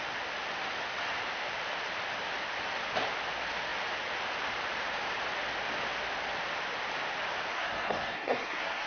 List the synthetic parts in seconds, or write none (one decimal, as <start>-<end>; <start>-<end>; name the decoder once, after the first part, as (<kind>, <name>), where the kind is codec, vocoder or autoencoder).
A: 7.5-8.9 (codec, SNAC)